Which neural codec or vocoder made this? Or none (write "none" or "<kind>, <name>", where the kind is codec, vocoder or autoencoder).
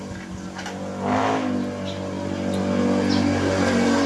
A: none